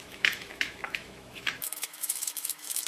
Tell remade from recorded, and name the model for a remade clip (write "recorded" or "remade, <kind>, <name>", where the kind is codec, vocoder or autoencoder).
remade, autoencoder, DAC-VAE